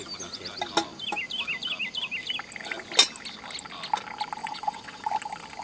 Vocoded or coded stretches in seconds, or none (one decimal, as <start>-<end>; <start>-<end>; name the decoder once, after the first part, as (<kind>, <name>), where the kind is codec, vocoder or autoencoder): 4.4-5.1 (vocoder, WaveNeXt)